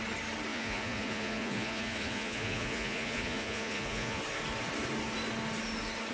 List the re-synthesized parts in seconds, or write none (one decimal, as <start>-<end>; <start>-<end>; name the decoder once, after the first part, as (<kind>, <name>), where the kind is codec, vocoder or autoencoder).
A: 0.5-4.2 (vocoder, Vocos)